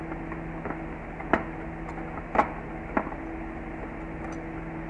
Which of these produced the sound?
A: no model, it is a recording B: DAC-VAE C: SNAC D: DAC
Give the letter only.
A